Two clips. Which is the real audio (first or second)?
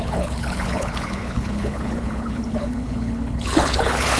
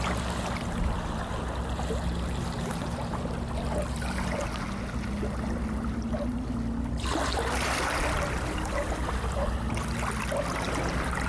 second